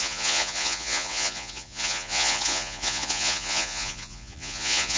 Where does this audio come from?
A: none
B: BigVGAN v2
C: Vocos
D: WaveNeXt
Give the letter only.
C